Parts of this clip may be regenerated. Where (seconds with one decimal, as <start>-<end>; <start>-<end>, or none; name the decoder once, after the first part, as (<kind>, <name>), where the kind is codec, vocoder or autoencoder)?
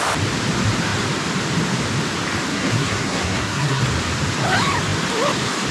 2.5-3.8 (codec, SNAC)